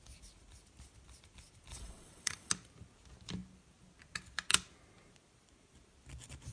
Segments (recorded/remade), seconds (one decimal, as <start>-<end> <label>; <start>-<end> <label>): 0.0-1.7 recorded; 1.7-2.5 remade; 2.5-6.5 recorded